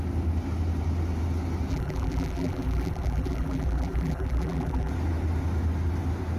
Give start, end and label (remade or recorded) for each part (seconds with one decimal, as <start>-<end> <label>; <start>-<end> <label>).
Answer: 0.0-1.7 recorded; 1.7-4.9 remade; 4.9-6.4 recorded